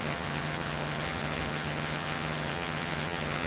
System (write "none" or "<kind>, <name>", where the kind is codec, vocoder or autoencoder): vocoder, HiFi-GAN